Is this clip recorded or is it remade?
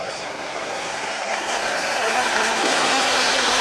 remade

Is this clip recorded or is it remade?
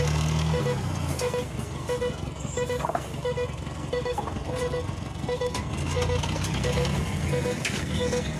remade